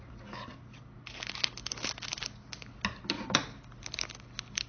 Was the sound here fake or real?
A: real